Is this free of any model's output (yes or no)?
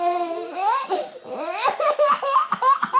yes